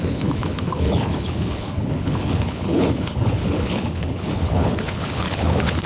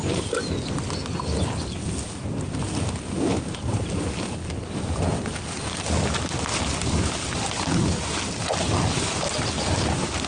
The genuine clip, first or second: second